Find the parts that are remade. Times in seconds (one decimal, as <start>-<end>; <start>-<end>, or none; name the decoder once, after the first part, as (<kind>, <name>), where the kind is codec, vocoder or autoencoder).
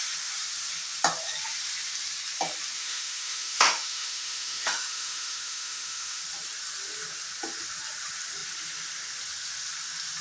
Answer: 2.8-6.2 (autoencoder, DAC-VAE)